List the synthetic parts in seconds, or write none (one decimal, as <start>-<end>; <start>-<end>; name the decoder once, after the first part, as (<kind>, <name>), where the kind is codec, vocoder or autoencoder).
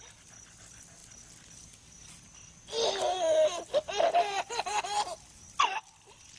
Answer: none